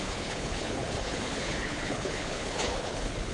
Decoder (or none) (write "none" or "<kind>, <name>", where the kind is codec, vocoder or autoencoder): codec, HILCodec